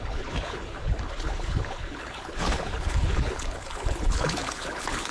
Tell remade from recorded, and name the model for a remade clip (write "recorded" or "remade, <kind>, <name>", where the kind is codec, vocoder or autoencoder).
remade, codec, HILCodec